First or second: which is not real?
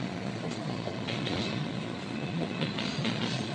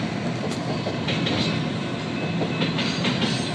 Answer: first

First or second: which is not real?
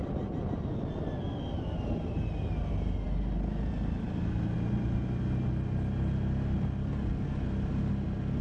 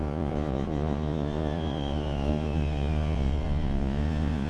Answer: second